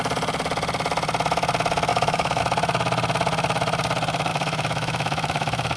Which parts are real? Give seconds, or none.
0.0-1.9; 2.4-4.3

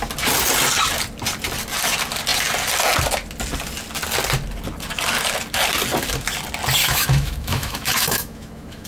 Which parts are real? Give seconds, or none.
0.0-6.8

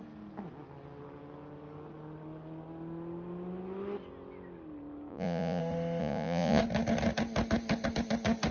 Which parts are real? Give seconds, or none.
0.0-5.1; 5.6-6.0; 6.6-8.5